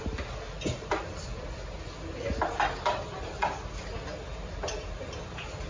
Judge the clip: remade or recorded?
recorded